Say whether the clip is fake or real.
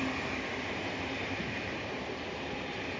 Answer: real